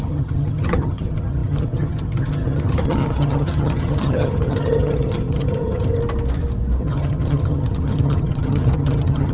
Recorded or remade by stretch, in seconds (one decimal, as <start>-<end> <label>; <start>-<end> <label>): 0.0-6.0 remade; 6.0-6.8 recorded; 6.8-9.3 remade